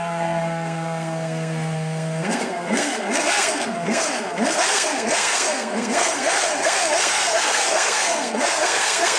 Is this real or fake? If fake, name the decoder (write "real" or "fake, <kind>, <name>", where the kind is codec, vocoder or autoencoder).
fake, codec, SNAC